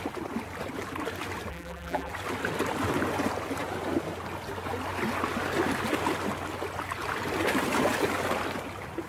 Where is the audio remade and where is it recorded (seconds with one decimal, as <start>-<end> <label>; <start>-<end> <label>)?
0.0-1.5 recorded; 1.5-2.1 remade; 2.1-9.1 recorded